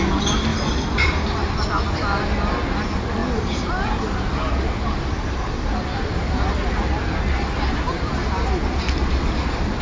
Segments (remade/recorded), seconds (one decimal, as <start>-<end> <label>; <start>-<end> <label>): 0.0-9.8 recorded